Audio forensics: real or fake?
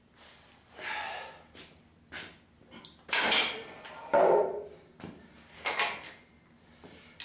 real